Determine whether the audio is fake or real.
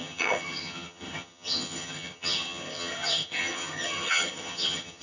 fake